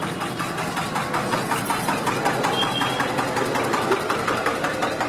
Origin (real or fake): real